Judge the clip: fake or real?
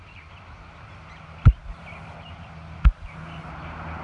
real